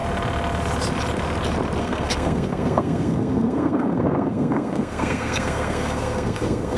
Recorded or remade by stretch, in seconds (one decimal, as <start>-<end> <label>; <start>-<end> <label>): 0.0-1.8 recorded; 1.8-6.8 remade